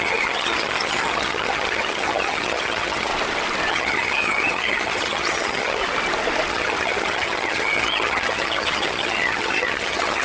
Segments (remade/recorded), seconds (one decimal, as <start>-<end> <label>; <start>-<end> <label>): 0.0-3.1 remade; 3.1-3.7 recorded; 3.7-5.8 remade; 5.8-6.5 recorded; 6.5-10.2 remade